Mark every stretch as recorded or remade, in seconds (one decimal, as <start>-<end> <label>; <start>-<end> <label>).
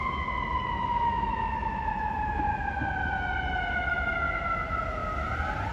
0.0-0.6 recorded; 0.6-2.4 remade; 2.4-5.7 recorded